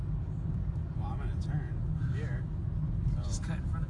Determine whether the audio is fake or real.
real